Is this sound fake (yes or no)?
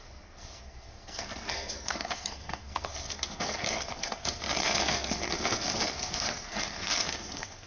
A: yes